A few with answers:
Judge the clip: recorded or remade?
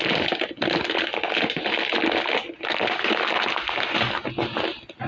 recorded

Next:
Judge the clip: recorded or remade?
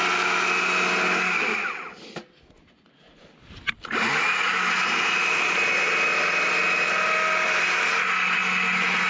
recorded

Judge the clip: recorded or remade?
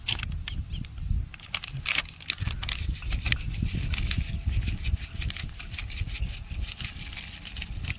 recorded